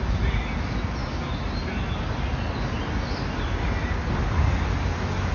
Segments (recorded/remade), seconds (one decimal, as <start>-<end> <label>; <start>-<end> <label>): 0.0-5.3 recorded